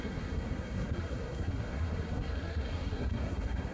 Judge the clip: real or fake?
fake